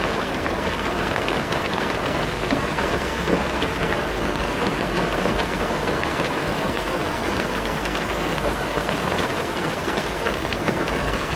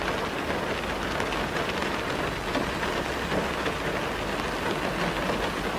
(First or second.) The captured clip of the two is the second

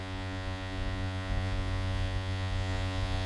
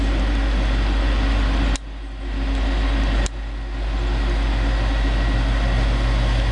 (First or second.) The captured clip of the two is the second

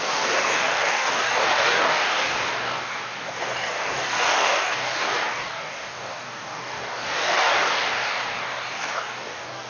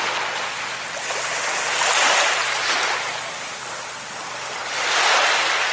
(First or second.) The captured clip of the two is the second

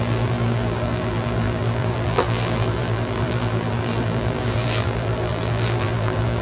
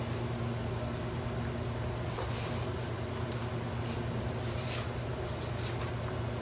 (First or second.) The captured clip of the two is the second